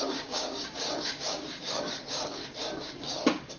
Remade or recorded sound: remade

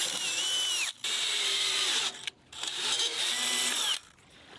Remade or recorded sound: recorded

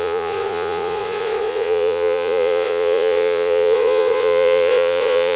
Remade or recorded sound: remade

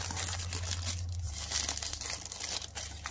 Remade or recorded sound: recorded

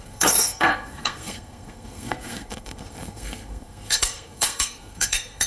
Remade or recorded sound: remade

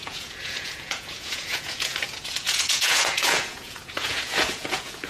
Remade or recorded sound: remade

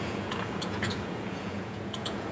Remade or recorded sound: remade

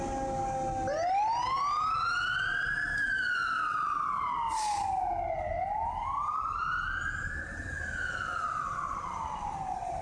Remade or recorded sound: recorded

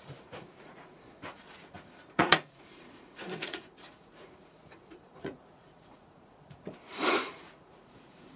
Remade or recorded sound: remade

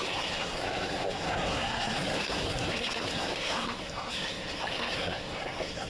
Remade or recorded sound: remade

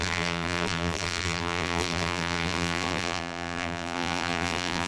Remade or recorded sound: remade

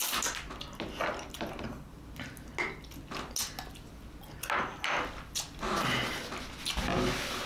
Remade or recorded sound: recorded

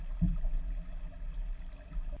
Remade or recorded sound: recorded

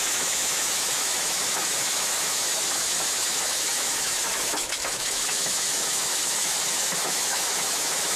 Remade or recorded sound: remade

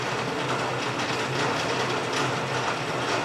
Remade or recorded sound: recorded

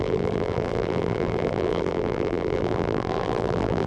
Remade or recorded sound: remade